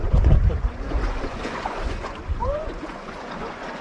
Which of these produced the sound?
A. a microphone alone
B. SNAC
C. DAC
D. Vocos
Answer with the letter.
D